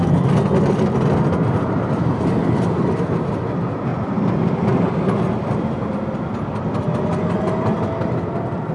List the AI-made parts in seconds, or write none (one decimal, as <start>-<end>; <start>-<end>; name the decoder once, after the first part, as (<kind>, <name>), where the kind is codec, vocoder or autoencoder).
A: none